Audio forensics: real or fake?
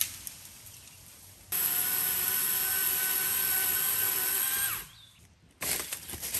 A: real